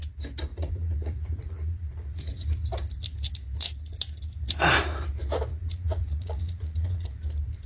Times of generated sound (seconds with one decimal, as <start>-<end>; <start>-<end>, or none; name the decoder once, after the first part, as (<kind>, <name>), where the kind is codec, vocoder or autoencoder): 0.5-2.3 (vocoder, Vocos); 5.5-7.2